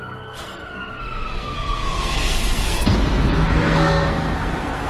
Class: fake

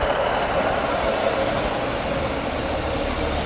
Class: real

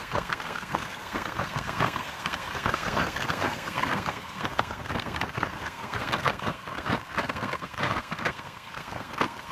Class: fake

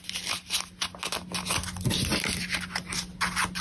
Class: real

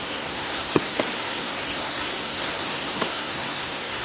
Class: fake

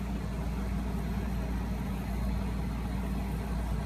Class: real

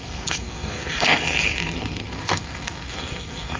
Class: fake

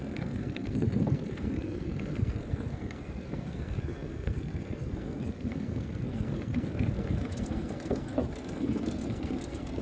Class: fake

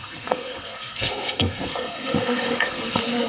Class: fake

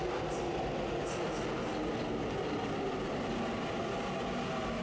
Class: real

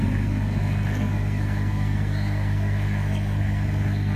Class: fake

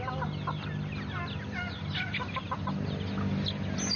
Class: real